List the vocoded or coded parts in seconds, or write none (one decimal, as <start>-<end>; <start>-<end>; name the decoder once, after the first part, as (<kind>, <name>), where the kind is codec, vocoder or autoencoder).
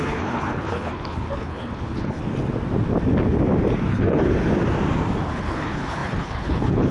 0.0-2.2 (codec, HILCodec); 3.9-4.3; 5.3-6.9